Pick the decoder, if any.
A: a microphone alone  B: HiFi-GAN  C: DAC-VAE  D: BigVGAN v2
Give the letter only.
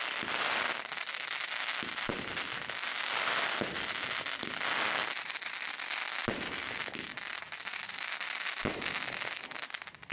A